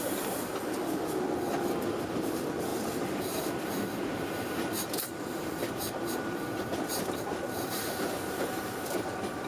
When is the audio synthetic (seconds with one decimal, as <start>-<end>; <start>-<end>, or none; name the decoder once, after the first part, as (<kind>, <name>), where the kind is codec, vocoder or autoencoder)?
0.0-0.5 (vocoder, BigVGAN v2); 1.8-9.5